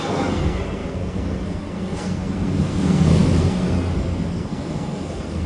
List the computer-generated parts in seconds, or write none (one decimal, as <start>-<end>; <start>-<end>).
0.0-5.5